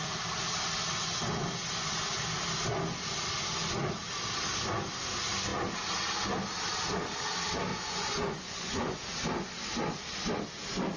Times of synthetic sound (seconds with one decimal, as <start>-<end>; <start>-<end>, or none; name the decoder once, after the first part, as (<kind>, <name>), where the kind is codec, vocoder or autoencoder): 7.7-9.0 (vocoder, Vocos)